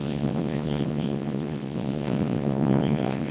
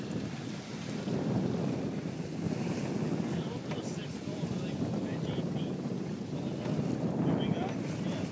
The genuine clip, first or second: second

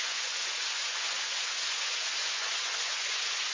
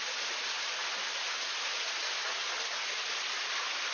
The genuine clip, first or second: second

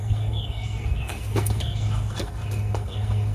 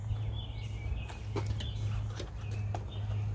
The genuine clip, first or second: second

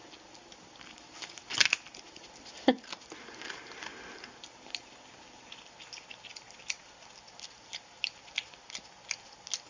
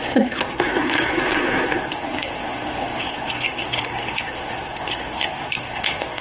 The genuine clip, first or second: first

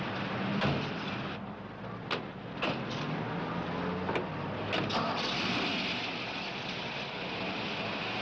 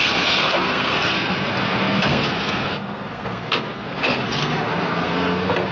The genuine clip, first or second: first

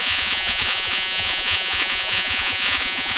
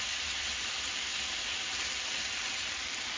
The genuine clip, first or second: second